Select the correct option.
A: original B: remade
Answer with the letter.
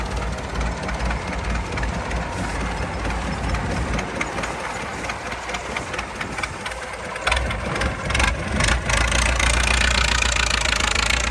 A